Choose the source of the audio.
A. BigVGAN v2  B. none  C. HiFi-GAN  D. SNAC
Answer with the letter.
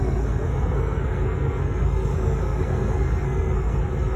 D